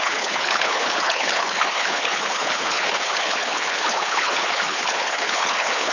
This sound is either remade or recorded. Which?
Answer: remade